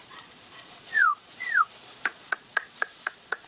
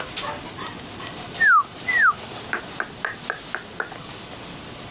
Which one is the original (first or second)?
second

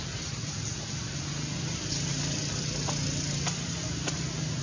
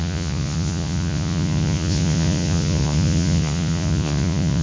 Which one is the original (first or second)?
first